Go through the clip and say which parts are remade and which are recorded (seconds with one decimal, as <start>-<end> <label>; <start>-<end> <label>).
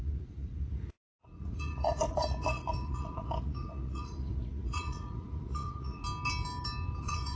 0.0-6.0 remade; 6.0-7.0 recorded; 7.0-7.4 remade